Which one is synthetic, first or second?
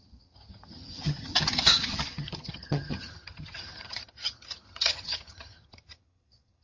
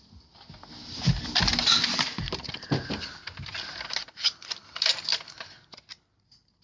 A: first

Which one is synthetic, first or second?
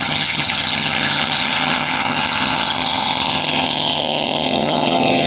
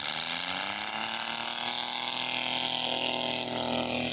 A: first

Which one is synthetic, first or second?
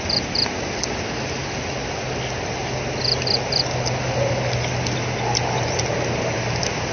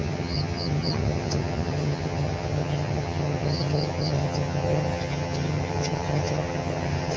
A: second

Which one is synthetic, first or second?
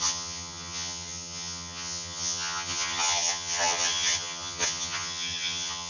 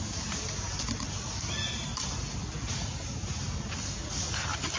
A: first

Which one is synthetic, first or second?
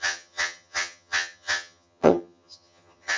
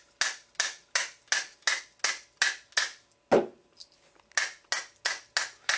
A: first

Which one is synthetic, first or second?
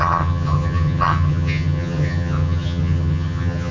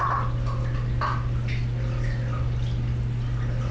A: first